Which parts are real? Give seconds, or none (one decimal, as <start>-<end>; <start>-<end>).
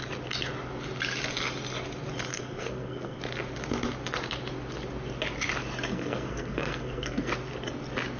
0.0-2.3; 3.2-5.9; 7.3-8.2